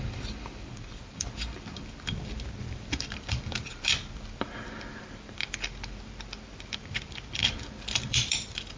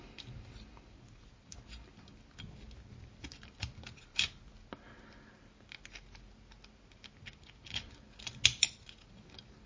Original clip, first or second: second